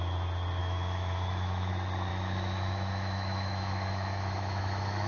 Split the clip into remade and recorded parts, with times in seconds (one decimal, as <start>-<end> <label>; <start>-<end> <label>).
0.0-0.6 recorded; 0.6-1.7 remade; 1.7-2.1 recorded; 2.1-5.1 remade